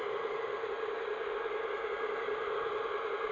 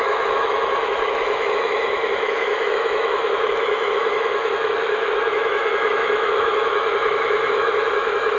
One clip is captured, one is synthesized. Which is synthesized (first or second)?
second